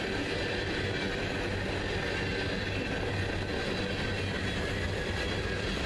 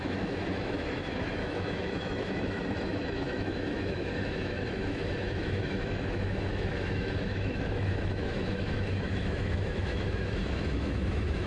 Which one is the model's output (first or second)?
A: second